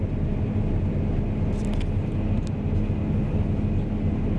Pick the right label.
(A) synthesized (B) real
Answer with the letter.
B